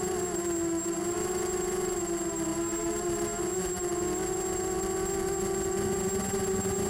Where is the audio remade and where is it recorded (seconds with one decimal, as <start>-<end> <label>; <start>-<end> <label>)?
0.0-6.9 recorded